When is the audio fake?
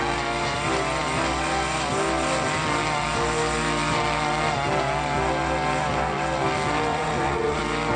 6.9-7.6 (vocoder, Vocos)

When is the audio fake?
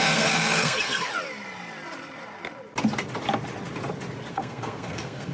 0.0-1.1 (codec, SNAC); 4.3-5.3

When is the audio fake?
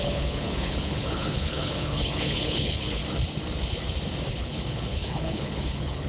0.0-3.0 (codec, HILCodec); 4.3-6.1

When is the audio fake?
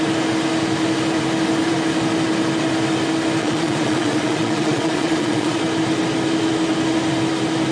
3.4-5.6 (vocoder, Vocos)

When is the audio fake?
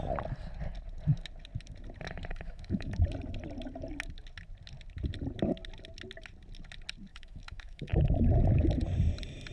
2.3-3.0 (autoencoder, DAC-VAE); 7.1-8.3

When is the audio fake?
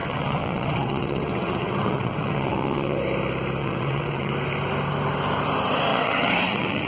0.0-3.0 (vocoder, WaveNeXt); 3.6-4.3; 5.9-6.9